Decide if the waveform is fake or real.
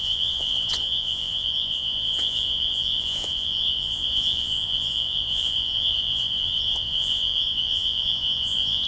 fake